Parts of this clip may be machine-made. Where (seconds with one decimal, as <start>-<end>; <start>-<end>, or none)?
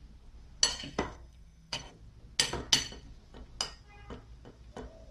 0.7-1.9